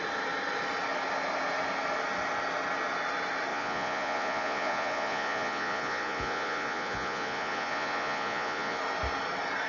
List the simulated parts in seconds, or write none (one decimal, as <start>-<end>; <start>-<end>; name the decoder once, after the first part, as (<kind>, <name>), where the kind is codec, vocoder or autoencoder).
3.5-8.8 (vocoder, Vocos)